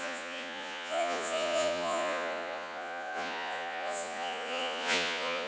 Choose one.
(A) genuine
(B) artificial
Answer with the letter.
B